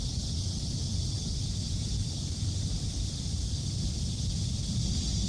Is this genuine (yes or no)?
no